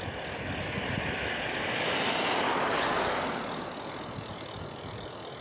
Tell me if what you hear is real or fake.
real